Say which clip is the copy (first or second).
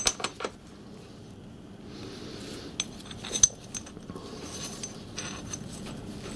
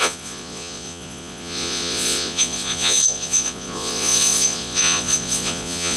second